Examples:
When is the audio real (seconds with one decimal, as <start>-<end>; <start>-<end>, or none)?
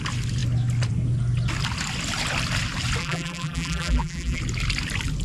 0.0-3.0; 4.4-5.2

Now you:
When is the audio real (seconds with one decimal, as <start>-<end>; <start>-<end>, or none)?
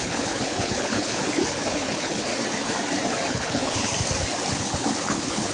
2.3-3.3; 3.9-4.6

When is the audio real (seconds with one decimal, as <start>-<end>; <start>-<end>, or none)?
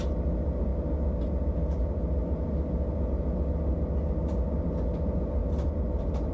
0.0-6.3